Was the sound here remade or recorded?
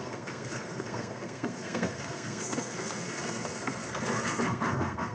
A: remade